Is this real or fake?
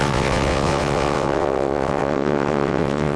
fake